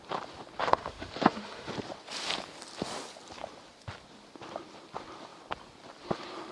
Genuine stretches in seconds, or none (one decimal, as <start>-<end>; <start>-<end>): 0.0-0.6; 1.7-6.5